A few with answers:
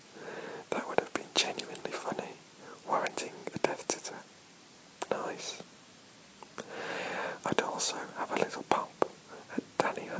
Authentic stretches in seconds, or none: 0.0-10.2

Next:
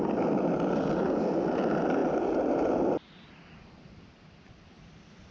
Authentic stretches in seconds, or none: 0.0-5.3